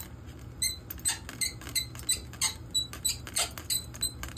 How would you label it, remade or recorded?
recorded